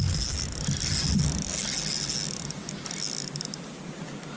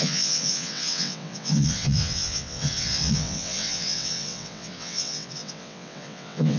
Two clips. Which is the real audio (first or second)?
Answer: first